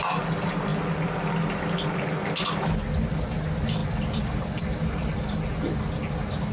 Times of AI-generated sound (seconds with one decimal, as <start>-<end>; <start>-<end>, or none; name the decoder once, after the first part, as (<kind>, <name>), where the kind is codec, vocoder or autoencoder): none